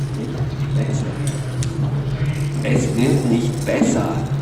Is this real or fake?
real